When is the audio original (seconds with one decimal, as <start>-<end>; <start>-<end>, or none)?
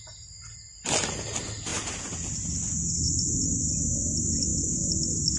0.0-5.4